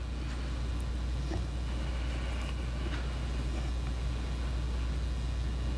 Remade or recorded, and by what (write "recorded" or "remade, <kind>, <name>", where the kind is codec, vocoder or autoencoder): recorded